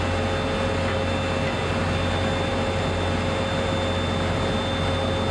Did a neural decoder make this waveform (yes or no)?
no